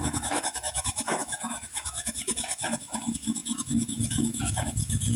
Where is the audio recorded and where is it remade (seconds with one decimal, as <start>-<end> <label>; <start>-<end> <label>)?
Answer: 0.0-5.2 remade